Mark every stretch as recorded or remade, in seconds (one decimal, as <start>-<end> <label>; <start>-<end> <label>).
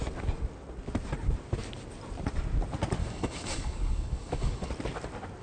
0.0-3.0 recorded; 3.0-4.7 remade; 4.7-5.4 recorded